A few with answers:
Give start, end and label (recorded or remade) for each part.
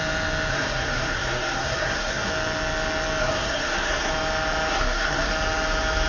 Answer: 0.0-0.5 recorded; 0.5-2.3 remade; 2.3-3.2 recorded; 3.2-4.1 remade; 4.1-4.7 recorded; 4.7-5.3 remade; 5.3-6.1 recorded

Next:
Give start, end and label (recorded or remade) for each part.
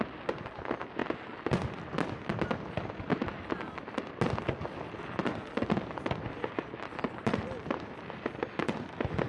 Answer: 0.0-9.3 recorded